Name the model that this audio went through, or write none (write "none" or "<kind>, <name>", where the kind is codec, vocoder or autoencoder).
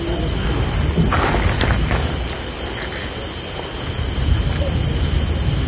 none